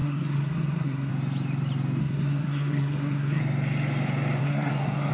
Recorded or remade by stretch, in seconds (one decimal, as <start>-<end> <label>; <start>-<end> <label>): 0.0-1.1 remade; 1.1-2.0 recorded; 2.0-3.4 remade; 3.4-4.4 recorded; 4.4-5.1 remade